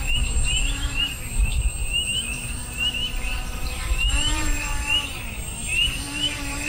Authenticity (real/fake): fake